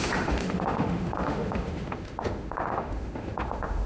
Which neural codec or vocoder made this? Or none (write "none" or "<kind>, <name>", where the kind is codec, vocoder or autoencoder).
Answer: autoencoder, DAC-VAE